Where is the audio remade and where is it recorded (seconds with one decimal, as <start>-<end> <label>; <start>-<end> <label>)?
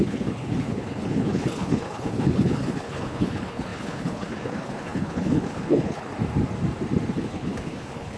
0.0-6.1 remade; 6.1-7.1 recorded; 7.1-8.2 remade